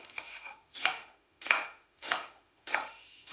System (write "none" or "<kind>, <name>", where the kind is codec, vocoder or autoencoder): autoencoder, DAC-VAE